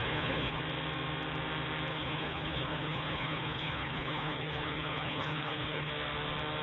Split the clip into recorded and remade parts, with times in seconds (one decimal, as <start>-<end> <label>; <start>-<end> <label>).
0.0-0.6 remade; 0.6-1.9 recorded; 1.9-5.9 remade; 5.9-6.6 recorded